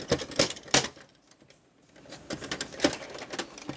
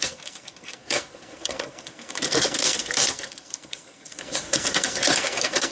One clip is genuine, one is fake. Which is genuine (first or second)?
first